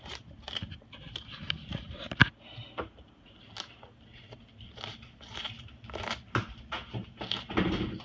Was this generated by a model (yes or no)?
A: no